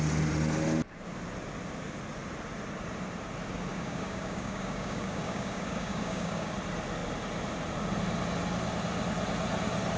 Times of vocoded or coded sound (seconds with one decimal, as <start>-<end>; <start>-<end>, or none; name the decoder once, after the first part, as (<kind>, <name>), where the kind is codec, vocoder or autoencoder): 3.7-6.5 (codec, DAC)